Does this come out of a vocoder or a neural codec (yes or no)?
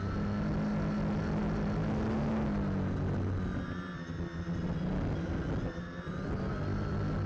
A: no